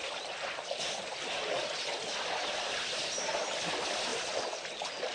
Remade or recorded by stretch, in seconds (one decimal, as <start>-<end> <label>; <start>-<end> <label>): 0.0-5.1 recorded